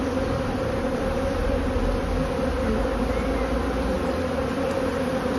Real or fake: real